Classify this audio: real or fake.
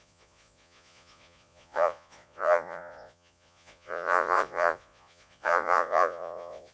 fake